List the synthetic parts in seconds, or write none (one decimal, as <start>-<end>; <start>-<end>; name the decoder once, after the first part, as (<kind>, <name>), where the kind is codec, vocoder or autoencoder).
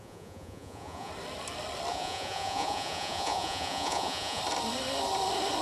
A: 0.0-1.1 (vocoder, Vocos); 1.9-4.4